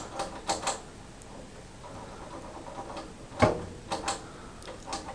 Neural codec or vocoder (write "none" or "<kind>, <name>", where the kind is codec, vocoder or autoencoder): none